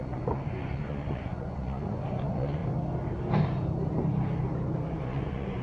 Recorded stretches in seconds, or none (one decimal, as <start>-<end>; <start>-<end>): 2.6-5.0